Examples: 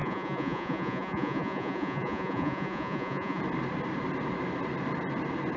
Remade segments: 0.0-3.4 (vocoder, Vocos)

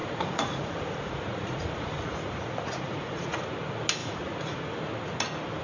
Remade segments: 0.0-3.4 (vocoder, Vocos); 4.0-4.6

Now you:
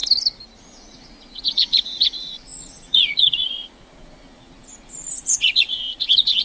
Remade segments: 0.6-6.4 (vocoder, Vocos)

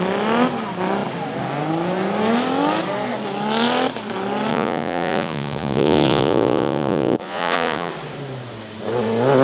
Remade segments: 4.5-7.9 (vocoder, Vocos)

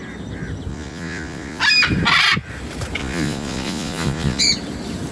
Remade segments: 0.7-1.6 (vocoder, Vocos); 3.0-4.4

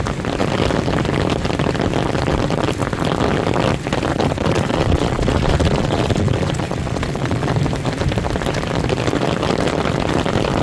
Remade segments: 4.1-7.5 (vocoder, Vocos)

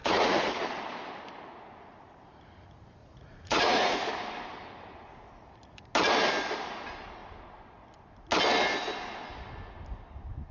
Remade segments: 0.0-0.8 (vocoder, Vocos); 3.0-4.1